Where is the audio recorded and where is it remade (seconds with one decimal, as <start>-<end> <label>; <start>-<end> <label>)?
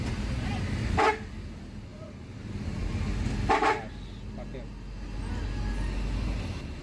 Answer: 0.0-6.8 recorded